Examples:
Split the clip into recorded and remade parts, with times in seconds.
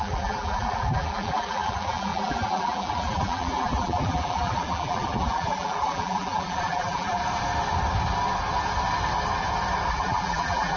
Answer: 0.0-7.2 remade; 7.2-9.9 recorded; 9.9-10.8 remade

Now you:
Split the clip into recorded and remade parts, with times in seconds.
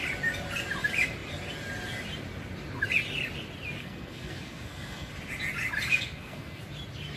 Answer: 0.0-3.8 recorded; 3.8-5.1 remade; 5.1-5.9 recorded; 5.9-6.6 remade; 6.6-7.2 recorded